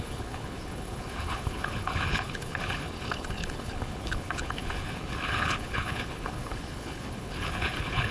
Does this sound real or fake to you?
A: fake